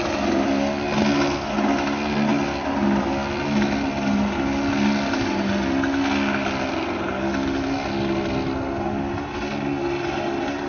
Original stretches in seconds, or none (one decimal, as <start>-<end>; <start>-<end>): 0.0-10.7